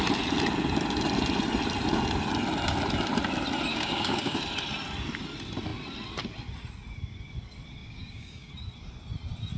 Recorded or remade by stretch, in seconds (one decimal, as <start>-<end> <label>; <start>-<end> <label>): 0.0-3.7 recorded; 3.7-4.4 remade; 4.4-7.8 recorded; 7.8-8.5 remade; 8.5-9.6 recorded